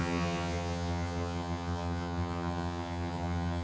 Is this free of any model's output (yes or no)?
no